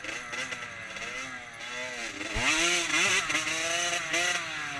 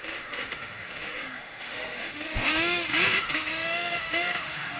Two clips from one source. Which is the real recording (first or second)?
first